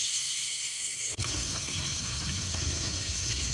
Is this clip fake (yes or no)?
yes